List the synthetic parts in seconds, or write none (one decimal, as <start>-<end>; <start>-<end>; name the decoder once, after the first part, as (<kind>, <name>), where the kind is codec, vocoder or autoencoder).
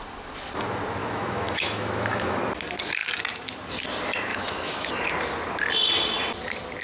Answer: 1.0-2.4 (autoencoder, DAC-VAE); 4.3-4.9